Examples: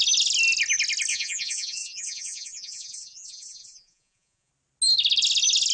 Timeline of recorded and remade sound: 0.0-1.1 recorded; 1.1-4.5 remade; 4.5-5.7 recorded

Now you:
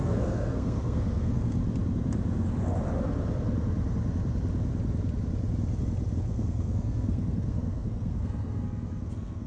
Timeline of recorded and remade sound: 0.0-1.6 remade; 1.6-6.2 recorded; 6.2-9.5 remade

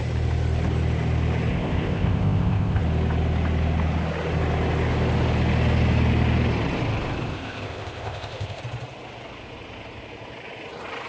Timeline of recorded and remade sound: 0.0-1.5 recorded; 1.5-2.8 remade; 2.8-7.3 recorded; 7.3-8.6 remade; 8.6-11.1 recorded

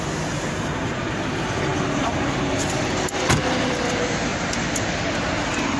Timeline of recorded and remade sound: 0.0-4.3 remade; 4.3-5.8 recorded

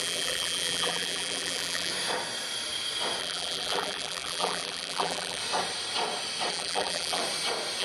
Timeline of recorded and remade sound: 0.0-1.9 remade; 1.9-3.2 recorded; 3.2-5.4 remade; 5.4-6.5 recorded; 6.5-7.2 remade; 7.2-7.8 recorded

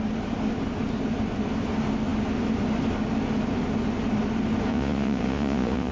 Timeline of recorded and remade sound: 0.0-4.7 recorded; 4.7-5.9 remade